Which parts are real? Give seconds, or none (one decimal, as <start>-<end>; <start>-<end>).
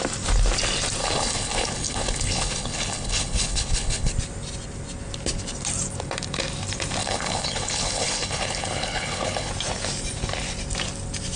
0.0-1.0; 4.1-7.0; 9.5-11.4